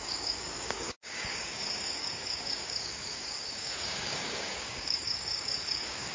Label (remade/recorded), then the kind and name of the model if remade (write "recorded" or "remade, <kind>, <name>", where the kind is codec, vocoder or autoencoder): remade, codec, DAC